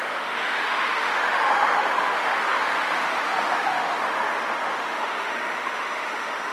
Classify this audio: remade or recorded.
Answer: remade